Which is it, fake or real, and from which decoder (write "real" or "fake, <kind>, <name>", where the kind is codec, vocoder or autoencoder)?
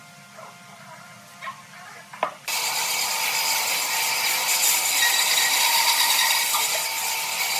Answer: real